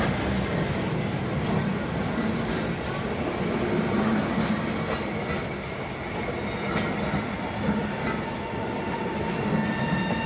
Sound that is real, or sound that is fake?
real